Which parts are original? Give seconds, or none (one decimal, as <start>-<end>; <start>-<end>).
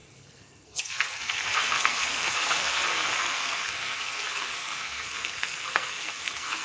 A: none